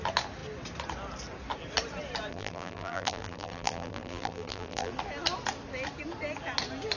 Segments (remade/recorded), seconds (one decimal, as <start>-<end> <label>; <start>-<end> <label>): 0.0-2.3 recorded; 2.3-4.9 remade; 4.9-7.0 recorded